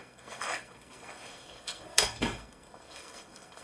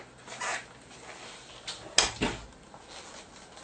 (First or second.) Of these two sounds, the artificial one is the first